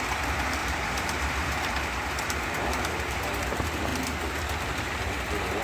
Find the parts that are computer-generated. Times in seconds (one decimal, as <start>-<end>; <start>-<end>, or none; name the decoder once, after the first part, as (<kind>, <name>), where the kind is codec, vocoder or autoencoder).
0.6-3.4 (vocoder, BigVGAN v2)